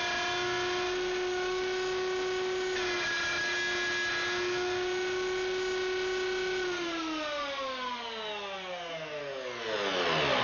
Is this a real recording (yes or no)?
yes